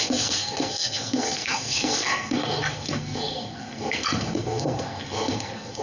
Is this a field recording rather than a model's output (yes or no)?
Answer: no